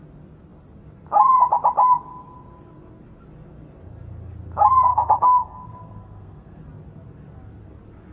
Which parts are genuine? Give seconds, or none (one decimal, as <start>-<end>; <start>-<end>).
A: 0.0-4.9; 6.6-8.1